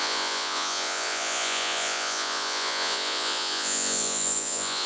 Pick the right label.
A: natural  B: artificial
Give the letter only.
B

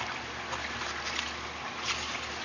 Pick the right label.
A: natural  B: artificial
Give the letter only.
A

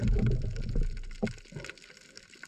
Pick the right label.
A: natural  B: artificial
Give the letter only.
A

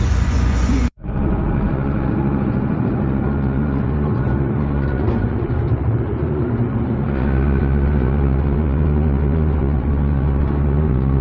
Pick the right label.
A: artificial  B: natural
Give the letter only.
A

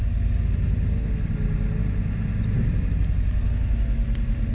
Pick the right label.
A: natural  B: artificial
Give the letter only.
A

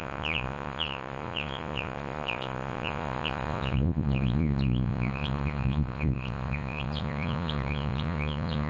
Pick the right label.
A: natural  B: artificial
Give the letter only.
B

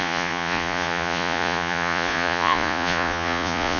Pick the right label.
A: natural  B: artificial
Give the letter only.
B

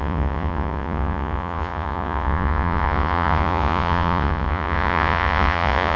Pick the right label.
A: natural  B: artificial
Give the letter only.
B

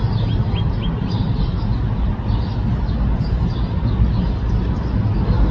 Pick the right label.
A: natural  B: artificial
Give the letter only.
A